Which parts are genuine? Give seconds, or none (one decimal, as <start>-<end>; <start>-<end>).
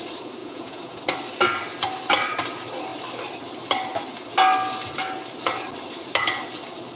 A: 0.0-0.4; 1.0-7.0